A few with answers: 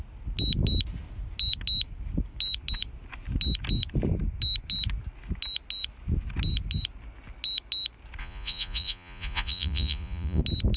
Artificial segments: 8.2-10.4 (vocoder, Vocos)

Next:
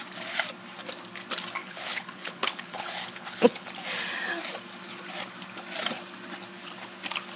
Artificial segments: 1.6-3.7 (codec, HILCodec)

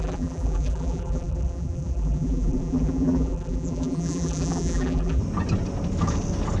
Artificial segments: 0.0-5.2 (vocoder, BigVGAN v2)

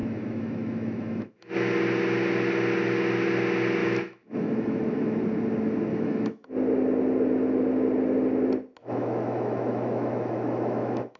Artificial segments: 0.0-1.5 (autoencoder, DAC-VAE); 3.8-5.2; 5.9-6.5; 8.8-11.2

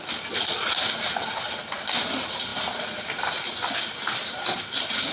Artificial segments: none

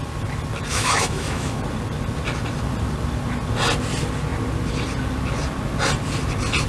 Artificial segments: 0.7-1.6 (autoencoder, DAC-VAE)